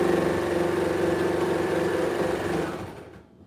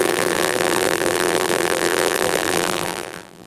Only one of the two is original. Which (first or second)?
first